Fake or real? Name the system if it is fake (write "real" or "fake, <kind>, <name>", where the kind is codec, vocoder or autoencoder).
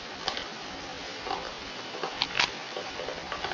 real